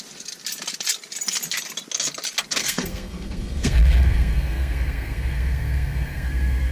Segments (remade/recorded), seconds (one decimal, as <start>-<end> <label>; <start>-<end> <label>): 0.0-2.6 recorded; 2.6-6.7 remade